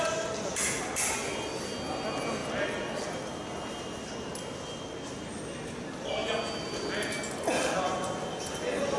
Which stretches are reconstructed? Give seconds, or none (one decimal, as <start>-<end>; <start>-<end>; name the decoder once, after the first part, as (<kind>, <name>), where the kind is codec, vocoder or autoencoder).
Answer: none